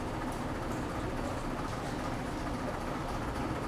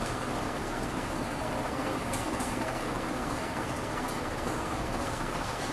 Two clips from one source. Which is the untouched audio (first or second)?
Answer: first